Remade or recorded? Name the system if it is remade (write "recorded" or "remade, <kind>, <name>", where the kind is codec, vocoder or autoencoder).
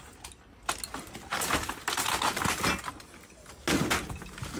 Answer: recorded